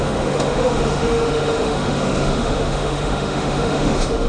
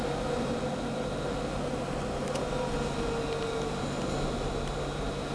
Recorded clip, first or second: second